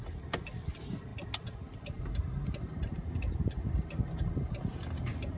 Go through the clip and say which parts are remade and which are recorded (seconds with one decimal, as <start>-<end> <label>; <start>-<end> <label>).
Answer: 0.0-5.4 recorded